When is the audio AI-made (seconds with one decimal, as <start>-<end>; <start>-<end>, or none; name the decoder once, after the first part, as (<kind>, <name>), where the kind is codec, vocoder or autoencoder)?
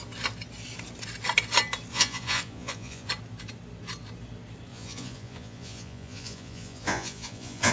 1.9-3.1 (vocoder, Vocos); 4.7-7.7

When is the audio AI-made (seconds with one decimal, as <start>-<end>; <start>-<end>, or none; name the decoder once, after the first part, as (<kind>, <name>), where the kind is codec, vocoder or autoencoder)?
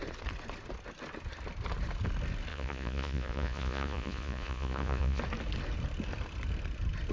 2.5-5.2 (vocoder, Vocos)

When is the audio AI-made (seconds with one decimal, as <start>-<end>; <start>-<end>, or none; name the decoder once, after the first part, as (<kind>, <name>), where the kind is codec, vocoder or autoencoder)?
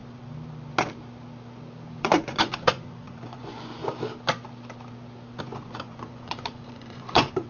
2.0-3.8 (vocoder, Vocos); 5.4-7.5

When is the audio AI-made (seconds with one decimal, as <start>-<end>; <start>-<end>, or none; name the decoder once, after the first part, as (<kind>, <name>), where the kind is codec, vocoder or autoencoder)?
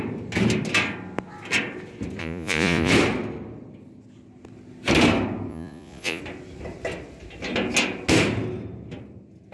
2.2-2.9 (vocoder, Vocos); 5.5-6.2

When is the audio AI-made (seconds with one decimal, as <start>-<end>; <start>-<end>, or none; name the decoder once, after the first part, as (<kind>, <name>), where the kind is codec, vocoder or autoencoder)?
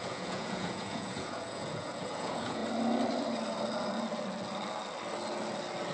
0.0-2.6 (vocoder, Vocos)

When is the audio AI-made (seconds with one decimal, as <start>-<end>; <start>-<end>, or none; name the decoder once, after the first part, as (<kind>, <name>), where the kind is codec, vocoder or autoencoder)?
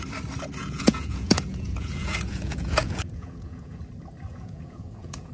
0.6-3.8 (vocoder, Vocos); 4.3-5.3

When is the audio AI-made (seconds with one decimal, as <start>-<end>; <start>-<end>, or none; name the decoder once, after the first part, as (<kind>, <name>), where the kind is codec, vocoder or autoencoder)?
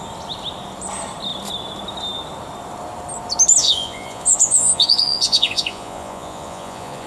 3.6-7.1 (vocoder, Vocos)